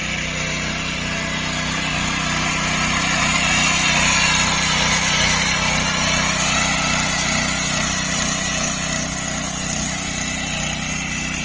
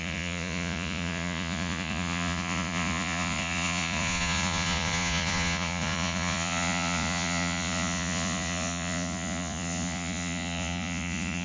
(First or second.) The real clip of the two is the first